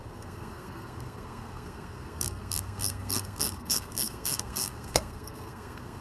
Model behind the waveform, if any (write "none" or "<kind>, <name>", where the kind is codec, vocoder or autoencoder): codec, SNAC